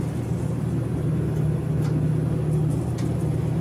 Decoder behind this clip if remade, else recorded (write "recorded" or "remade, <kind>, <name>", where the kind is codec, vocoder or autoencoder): recorded